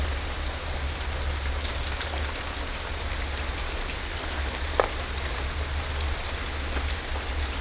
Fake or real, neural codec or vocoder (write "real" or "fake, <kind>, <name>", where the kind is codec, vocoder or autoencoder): real